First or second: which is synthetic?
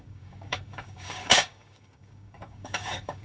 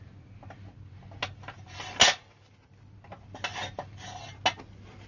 first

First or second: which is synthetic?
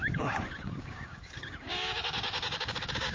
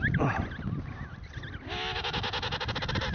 first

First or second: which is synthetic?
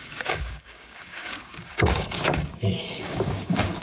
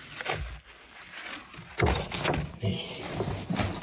first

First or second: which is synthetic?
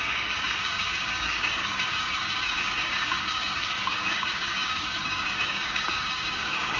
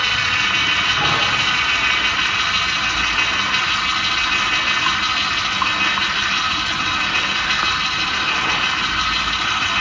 first